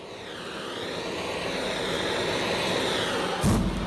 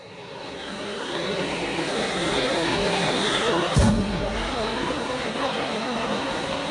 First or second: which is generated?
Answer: second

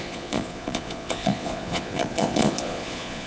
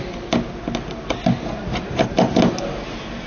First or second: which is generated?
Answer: first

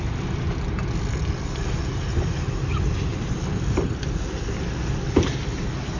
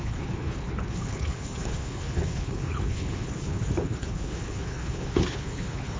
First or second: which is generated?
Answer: second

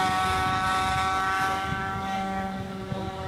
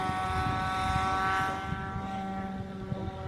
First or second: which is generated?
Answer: first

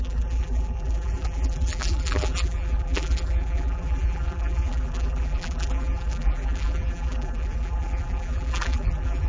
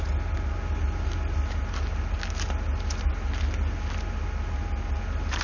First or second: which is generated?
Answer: first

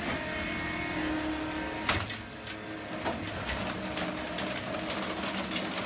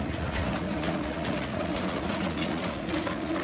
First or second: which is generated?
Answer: second